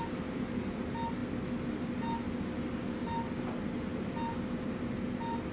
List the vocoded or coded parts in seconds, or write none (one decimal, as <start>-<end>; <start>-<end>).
none

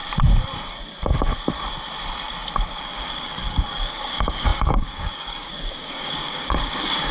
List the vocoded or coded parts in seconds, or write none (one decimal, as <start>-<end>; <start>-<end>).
2.8-7.1